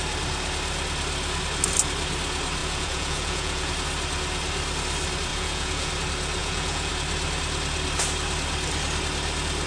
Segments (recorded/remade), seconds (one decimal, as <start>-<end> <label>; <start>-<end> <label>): 0.0-2.6 recorded; 2.6-3.7 remade; 3.7-5.3 recorded; 5.3-5.9 remade; 5.9-6.4 recorded; 6.4-6.9 remade; 6.9-9.7 recorded